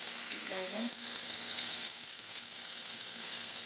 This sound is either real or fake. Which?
fake